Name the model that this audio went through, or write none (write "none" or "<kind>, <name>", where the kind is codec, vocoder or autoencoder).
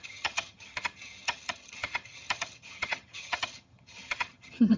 vocoder, HiFi-GAN